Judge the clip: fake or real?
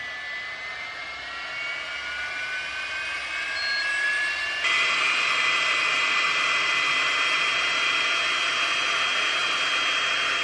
real